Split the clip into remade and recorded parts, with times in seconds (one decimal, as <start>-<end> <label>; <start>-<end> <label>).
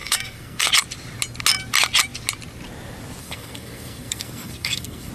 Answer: 0.0-0.7 remade; 0.7-3.2 recorded; 3.2-5.1 remade